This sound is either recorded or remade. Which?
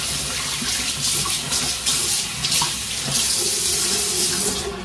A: recorded